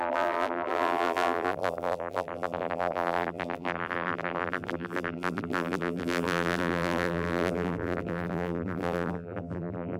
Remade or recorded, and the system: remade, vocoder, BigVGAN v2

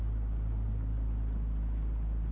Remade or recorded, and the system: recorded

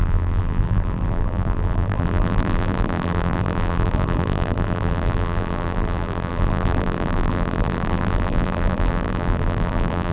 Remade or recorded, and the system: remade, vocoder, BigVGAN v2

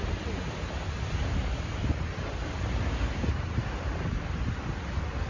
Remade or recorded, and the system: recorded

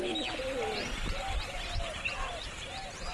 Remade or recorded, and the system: recorded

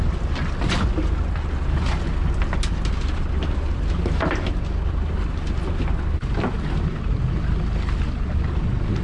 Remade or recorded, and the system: recorded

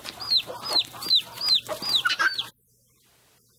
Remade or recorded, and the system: remade, vocoder, BigVGAN v2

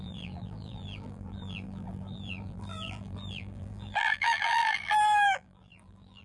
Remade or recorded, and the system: remade, vocoder, BigVGAN v2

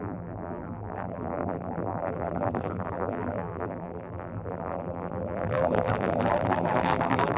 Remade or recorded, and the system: remade, vocoder, BigVGAN v2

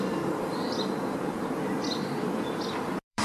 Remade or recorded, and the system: remade, vocoder, BigVGAN v2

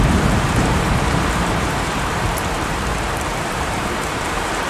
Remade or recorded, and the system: remade, vocoder, BigVGAN v2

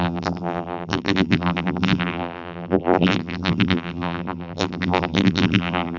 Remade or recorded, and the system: remade, vocoder, BigVGAN v2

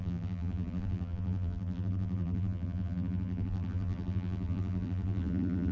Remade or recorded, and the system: remade, vocoder, BigVGAN v2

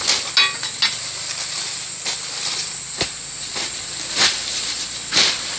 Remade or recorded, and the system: recorded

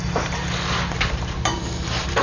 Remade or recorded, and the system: recorded